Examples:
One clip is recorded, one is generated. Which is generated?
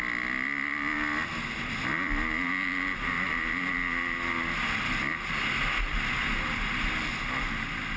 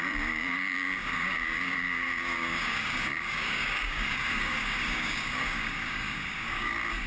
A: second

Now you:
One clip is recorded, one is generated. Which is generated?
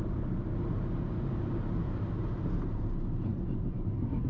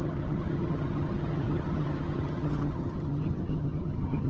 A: second